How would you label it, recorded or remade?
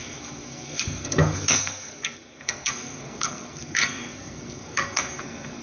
remade